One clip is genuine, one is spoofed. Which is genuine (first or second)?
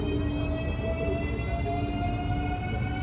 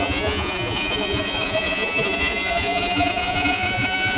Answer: first